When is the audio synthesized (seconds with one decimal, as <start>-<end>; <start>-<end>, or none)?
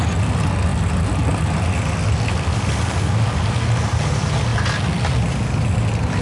none